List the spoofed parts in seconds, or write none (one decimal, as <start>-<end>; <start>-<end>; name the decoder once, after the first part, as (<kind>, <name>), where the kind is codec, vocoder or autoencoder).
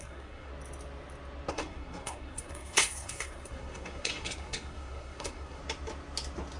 0.0-0.5 (codec, SNAC); 1.5-5.6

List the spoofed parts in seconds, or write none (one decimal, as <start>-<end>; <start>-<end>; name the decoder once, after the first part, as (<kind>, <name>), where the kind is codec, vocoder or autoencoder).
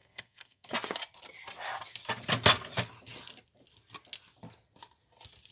0.0-0.7 (codec, SNAC)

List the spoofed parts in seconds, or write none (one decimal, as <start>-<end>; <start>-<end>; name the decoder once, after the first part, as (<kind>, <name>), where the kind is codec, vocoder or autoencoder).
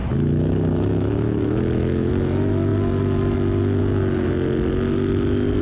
0.0-2.1 (autoencoder, DAC-VAE)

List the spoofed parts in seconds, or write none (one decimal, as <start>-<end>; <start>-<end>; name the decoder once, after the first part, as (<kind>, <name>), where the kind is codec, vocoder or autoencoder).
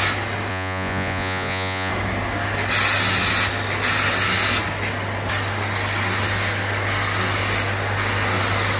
0.5-1.9 (vocoder, Vocos)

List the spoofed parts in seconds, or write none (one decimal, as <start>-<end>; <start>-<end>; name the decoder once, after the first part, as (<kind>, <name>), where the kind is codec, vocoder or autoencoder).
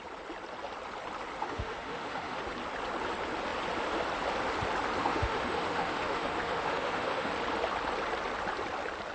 1.4-2.4 (autoencoder, DAC-VAE); 5.0-7.3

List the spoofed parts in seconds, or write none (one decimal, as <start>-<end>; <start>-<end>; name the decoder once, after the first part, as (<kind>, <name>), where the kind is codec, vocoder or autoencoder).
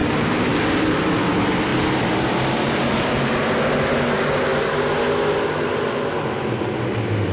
0.0-0.5 (vocoder, BigVGAN v2); 1.7-3.1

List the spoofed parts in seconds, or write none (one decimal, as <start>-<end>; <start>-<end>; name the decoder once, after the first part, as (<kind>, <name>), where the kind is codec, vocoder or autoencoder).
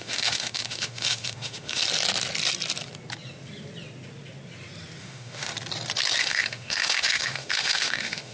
0.0-1.8 (autoencoder, DAC-VAE); 5.0-5.5; 6.2-8.3